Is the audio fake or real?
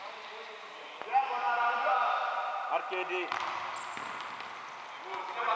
real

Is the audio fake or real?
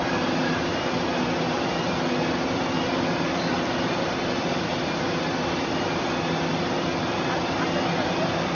real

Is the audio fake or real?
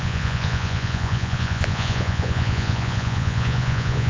fake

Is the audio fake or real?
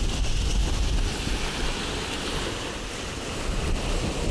real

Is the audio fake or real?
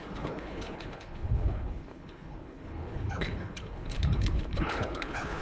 fake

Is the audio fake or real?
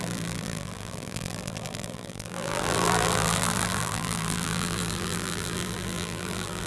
fake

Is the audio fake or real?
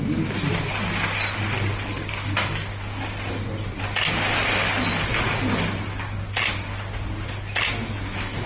real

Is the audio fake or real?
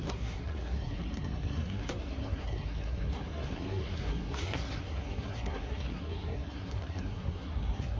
fake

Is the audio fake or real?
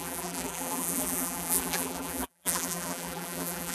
fake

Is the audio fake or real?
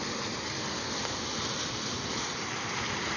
real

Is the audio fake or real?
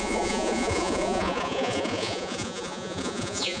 fake